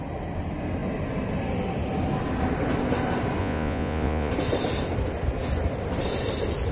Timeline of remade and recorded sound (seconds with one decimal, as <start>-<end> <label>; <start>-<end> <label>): 0.0-3.4 recorded; 3.4-4.3 remade; 4.3-6.7 recorded